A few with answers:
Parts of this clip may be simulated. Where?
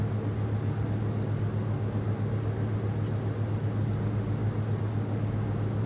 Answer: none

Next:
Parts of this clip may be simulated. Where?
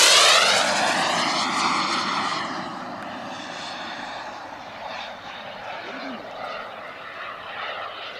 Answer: 2.3-6.0 (vocoder, BigVGAN v2)